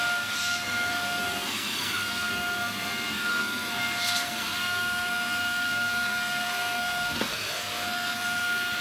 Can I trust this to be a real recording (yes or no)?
no